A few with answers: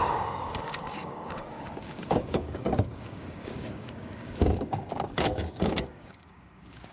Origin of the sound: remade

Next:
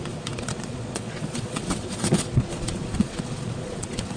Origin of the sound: remade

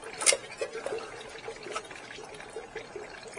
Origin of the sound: recorded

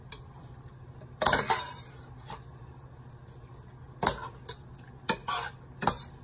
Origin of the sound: recorded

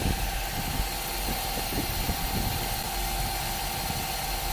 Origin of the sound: recorded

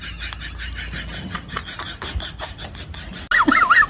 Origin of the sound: recorded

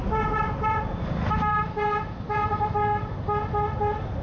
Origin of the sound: recorded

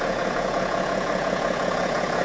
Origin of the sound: remade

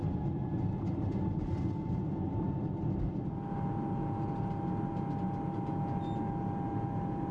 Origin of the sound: recorded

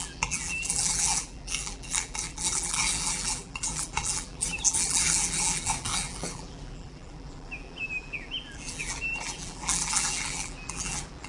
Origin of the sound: remade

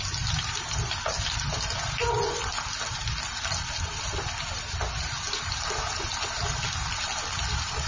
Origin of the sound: recorded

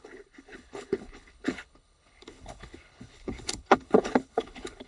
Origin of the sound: remade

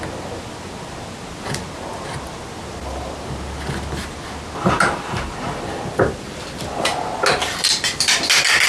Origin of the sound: recorded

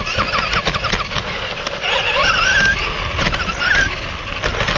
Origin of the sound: recorded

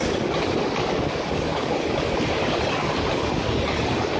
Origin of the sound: remade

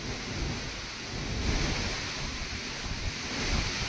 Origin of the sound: recorded